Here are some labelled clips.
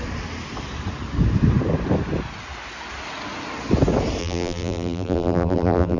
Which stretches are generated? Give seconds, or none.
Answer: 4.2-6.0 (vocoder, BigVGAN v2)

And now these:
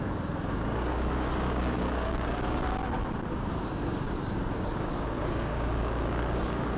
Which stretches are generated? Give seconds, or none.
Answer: 0.0-2.8 (codec, DAC); 3.3-6.8